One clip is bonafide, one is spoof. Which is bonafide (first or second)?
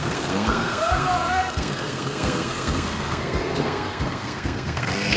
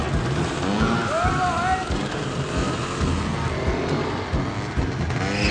second